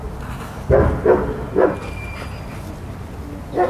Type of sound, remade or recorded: recorded